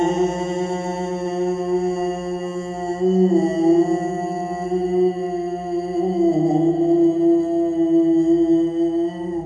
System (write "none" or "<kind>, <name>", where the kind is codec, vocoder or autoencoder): none